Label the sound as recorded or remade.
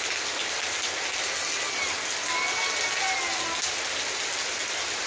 recorded